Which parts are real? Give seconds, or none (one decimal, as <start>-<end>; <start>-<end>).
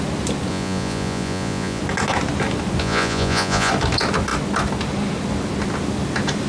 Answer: 0.0-0.5; 1.8-2.8; 3.7-6.5